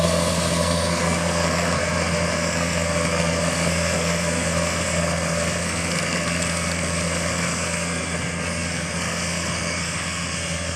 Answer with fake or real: fake